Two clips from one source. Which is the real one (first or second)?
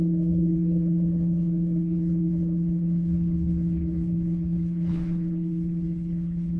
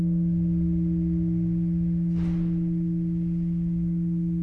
second